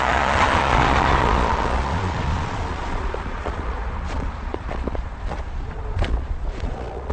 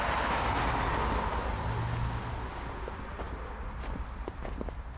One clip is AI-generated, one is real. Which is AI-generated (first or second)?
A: first